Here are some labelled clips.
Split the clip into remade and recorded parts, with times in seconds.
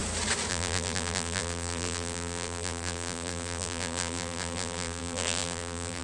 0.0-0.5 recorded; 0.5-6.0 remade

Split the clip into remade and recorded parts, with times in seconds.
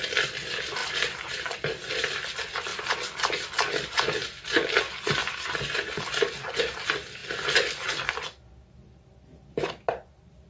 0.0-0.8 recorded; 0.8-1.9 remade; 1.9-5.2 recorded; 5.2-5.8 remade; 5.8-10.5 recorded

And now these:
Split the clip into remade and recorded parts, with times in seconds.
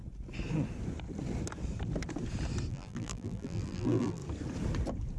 0.0-2.7 recorded; 2.7-4.2 remade; 4.2-5.2 recorded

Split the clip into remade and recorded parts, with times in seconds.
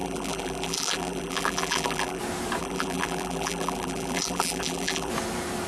0.0-2.2 remade; 2.2-2.6 recorded; 2.6-5.1 remade; 5.1-5.7 recorded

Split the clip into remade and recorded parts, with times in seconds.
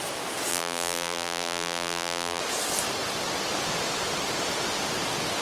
0.0-0.5 recorded; 0.5-2.4 remade; 2.4-5.4 recorded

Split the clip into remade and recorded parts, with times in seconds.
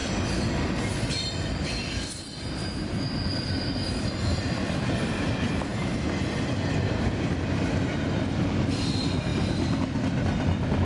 0.0-4.0 recorded; 4.0-5.7 remade; 5.7-8.3 recorded; 8.3-9.3 remade; 9.3-10.8 recorded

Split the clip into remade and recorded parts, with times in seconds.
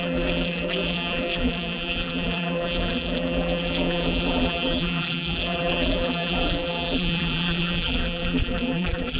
0.0-9.2 remade